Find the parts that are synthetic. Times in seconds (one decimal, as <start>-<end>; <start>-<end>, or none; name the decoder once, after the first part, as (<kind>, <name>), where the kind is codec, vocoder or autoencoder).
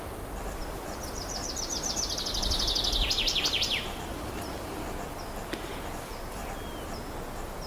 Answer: 4.1-4.8 (vocoder, BigVGAN v2)